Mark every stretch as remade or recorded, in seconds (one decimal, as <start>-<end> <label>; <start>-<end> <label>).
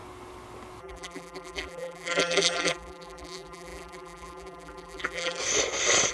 0.0-0.8 recorded; 0.8-5.4 remade; 5.4-6.1 recorded